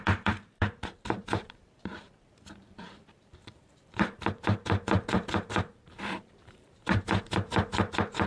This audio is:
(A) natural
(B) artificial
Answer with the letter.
B